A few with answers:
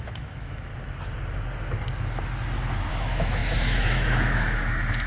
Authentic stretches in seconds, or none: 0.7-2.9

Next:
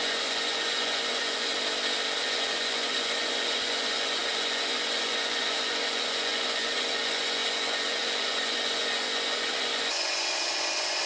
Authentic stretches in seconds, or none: 1.5-2.2

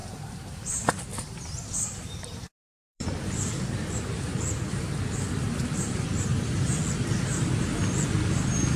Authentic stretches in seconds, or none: 6.3-8.2